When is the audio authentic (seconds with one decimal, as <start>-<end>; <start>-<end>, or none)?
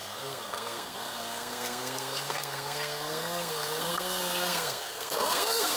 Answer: none